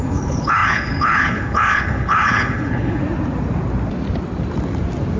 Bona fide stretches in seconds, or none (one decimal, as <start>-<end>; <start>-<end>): 3.0-5.2